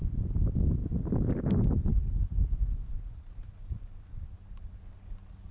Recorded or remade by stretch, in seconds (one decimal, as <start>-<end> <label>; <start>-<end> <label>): 0.0-1.9 recorded; 1.9-4.8 remade; 4.8-5.5 recorded